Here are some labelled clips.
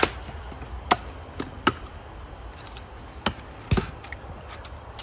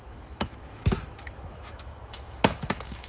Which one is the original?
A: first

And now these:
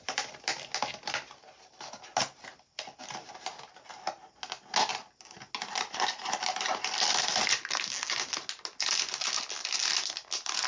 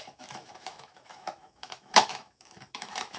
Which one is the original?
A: first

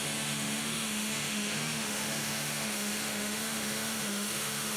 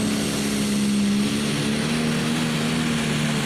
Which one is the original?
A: second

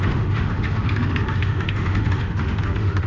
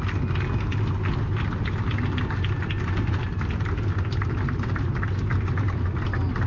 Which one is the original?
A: second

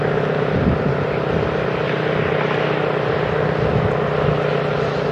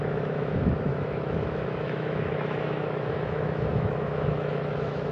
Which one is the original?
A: first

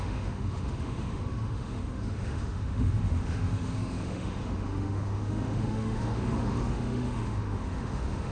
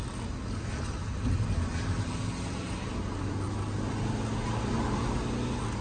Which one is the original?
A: second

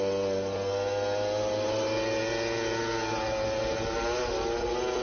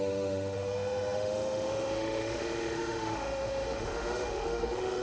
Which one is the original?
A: first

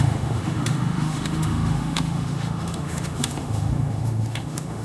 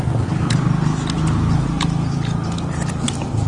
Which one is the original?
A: second